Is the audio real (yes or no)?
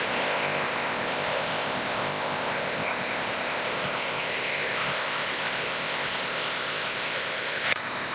no